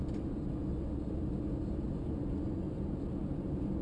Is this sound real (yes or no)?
yes